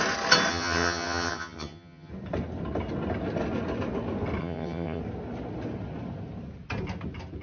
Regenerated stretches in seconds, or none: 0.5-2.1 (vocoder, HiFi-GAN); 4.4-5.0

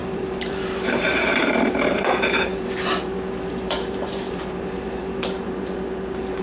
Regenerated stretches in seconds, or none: 0.0-6.4 (vocoder, BigVGAN v2)

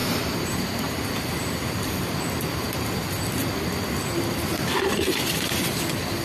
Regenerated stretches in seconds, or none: 0.0-1.1 (vocoder, BigVGAN v2)

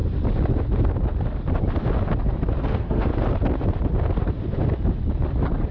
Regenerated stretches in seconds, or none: 2.6-3.1 (codec, SNAC)

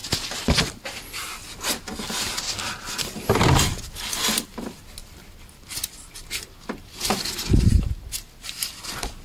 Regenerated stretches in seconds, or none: none

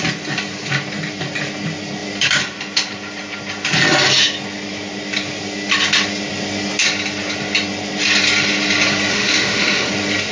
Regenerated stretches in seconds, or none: 9.1-9.9 (autoencoder, DAC-VAE)

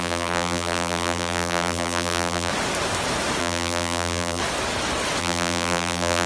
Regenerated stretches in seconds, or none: 0.0-2.5 (vocoder, BigVGAN v2); 3.4-4.4; 5.2-6.3